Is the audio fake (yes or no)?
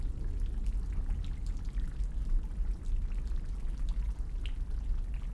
no